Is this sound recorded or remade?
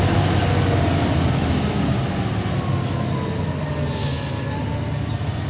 recorded